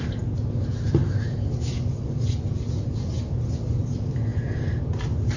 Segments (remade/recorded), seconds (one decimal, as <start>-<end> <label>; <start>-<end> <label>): 0.0-5.4 recorded